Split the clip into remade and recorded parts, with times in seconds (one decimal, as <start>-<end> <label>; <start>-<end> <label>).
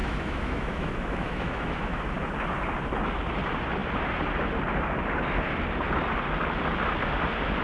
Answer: 0.0-2.1 remade; 2.1-7.6 recorded